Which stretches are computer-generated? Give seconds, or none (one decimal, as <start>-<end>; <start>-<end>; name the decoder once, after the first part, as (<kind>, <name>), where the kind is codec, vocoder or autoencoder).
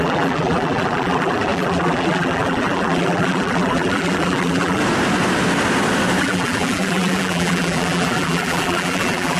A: 0.0-4.8 (vocoder, BigVGAN v2); 6.2-9.4